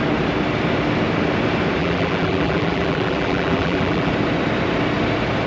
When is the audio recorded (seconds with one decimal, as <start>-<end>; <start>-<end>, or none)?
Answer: 0.0-1.8; 4.1-5.5